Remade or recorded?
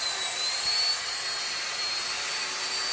recorded